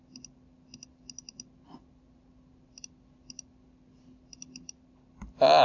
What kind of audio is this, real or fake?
real